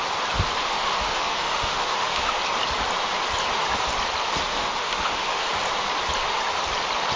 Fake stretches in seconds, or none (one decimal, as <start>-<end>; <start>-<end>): 0.6-2.4; 4.5-5.5